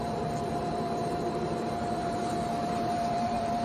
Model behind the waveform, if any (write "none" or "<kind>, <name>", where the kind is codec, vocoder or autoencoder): vocoder, BigVGAN v2